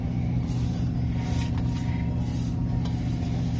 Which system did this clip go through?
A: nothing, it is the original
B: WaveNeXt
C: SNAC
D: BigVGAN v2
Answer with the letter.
A